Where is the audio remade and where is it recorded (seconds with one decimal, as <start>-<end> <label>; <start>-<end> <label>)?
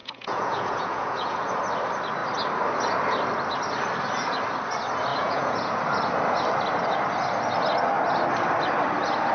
0.0-1.4 remade; 1.4-5.1 recorded; 5.1-5.8 remade; 5.8-9.3 recorded